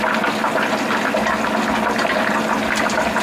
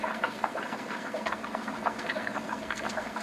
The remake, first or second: second